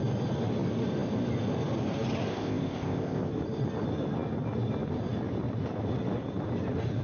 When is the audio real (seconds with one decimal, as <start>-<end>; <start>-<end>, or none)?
0.0-2.3; 3.3-7.0